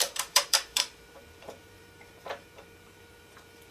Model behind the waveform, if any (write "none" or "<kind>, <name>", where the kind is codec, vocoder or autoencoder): vocoder, BigVGAN v2